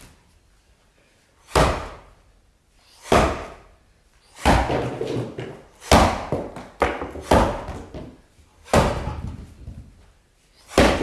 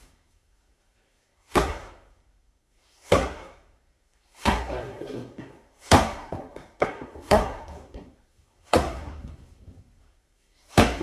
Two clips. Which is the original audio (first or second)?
first